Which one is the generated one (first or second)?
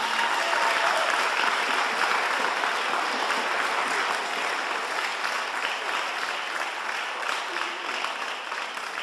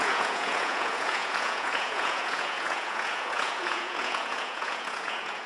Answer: second